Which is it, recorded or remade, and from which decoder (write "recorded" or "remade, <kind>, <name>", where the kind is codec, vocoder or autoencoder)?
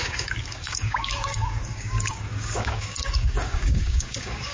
remade, codec, DAC